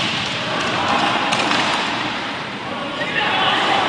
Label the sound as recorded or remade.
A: remade